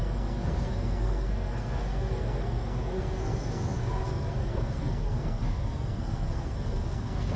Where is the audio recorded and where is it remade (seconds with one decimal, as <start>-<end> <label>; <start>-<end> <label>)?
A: 0.0-7.4 remade